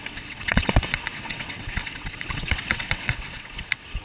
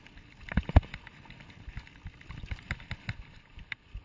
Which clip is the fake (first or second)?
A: first